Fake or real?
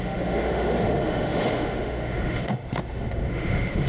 fake